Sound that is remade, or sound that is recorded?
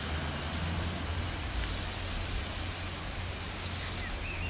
recorded